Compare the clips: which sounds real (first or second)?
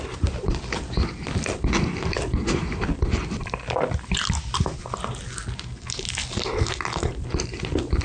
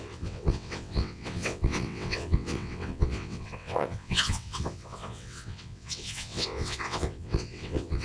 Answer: first